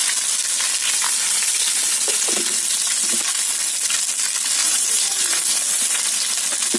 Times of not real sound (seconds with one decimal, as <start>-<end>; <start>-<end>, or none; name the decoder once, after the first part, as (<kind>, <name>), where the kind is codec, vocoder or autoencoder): 4.6-5.4 (vocoder, BigVGAN v2)